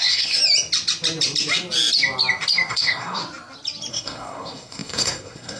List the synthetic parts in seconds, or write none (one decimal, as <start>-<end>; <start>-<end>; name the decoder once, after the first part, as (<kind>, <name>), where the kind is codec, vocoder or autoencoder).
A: 0.0-0.4 (codec, SNAC); 2.7-3.2; 3.9-5.6